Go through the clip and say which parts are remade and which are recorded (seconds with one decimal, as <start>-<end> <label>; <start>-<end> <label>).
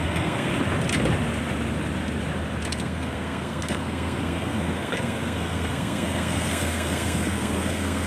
0.0-0.5 remade; 0.5-2.7 recorded; 2.7-8.1 remade